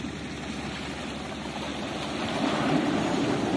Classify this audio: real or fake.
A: real